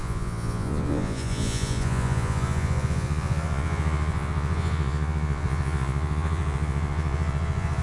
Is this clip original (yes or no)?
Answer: no